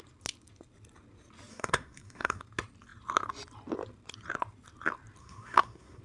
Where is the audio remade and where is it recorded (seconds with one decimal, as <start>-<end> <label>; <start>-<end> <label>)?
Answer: 0.0-1.5 recorded; 1.5-2.4 remade; 2.4-5.2 recorded; 5.2-6.0 remade